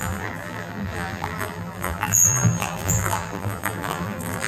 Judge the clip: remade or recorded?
remade